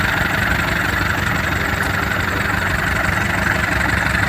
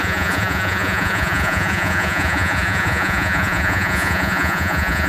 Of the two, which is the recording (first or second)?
first